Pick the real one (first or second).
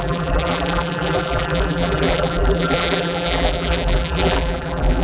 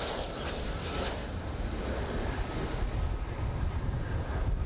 second